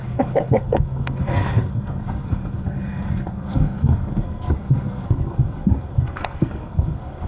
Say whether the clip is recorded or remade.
remade